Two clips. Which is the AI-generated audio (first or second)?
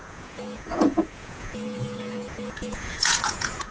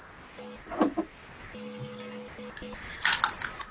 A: first